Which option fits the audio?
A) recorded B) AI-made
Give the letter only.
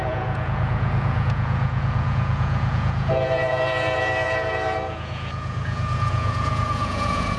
B